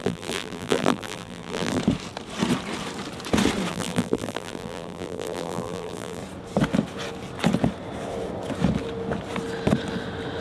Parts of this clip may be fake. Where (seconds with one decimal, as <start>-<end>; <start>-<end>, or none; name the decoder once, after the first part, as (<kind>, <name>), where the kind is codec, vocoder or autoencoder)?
0.0-1.8 (vocoder, BigVGAN v2); 3.7-6.2